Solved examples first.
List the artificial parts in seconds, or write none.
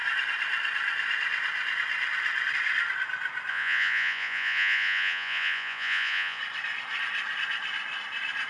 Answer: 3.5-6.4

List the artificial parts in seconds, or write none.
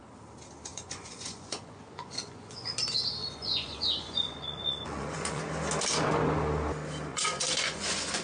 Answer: 0.7-2.7; 3.2-5.4; 7.1-8.2